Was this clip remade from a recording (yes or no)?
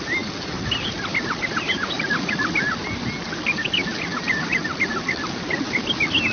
no